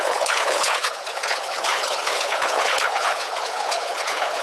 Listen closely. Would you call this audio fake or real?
fake